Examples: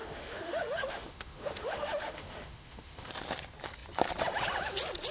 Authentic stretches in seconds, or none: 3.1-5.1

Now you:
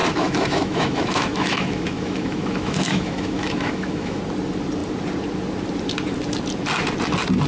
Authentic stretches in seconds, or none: 4.2-7.5

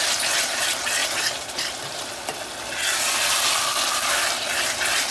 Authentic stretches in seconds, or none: 0.0-5.1

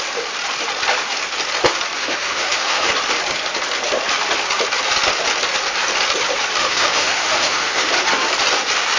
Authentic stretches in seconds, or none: 0.0-2.0; 2.9-6.6; 7.9-9.0

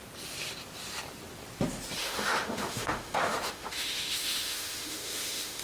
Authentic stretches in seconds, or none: 0.0-2.0